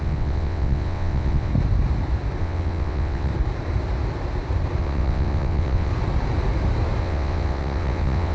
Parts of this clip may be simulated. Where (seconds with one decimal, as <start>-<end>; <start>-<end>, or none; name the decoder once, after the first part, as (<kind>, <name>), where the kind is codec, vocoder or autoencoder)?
0.0-1.5 (vocoder, WaveNeXt); 2.4-3.3; 4.8-5.9; 7.0-8.3